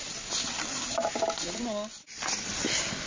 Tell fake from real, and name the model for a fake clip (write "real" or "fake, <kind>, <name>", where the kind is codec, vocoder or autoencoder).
real